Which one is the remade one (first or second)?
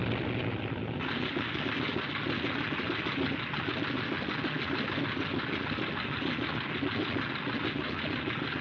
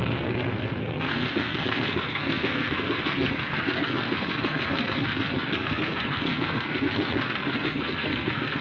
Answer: second